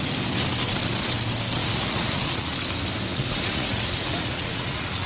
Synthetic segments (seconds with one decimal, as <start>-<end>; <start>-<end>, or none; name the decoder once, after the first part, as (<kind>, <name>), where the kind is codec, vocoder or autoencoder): 1.6-2.5 (vocoder, Vocos); 3.1-5.1